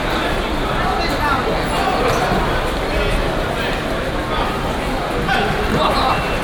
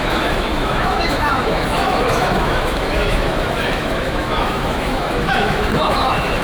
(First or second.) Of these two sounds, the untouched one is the first